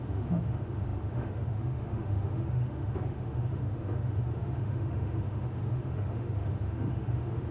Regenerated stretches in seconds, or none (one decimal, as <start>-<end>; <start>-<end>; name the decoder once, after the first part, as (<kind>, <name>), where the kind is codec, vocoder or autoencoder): 0.0-7.5 (autoencoder, DAC-VAE)